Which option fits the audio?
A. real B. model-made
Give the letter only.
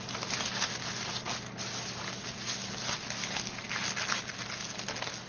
A